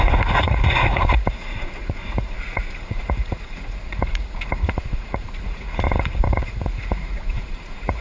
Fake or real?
fake